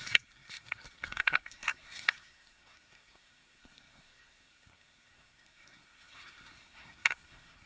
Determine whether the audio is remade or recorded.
remade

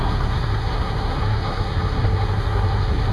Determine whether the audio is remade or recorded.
remade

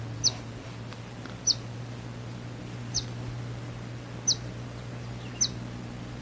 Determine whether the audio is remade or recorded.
recorded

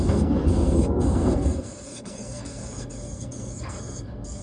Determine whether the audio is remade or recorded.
remade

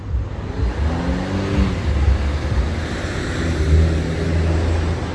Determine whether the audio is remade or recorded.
recorded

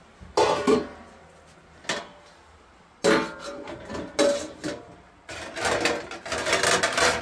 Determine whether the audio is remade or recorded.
recorded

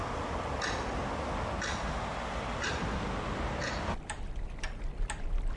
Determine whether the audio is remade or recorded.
recorded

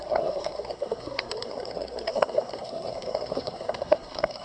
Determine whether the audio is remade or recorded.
remade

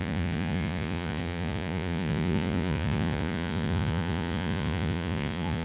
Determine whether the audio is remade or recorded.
remade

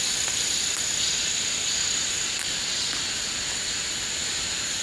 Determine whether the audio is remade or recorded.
recorded